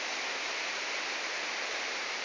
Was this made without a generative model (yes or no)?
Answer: no